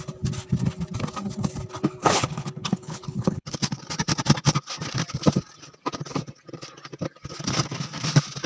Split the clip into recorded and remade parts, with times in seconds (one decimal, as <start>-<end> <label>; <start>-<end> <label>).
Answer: 0.0-2.0 recorded; 2.0-3.8 remade; 3.8-8.5 recorded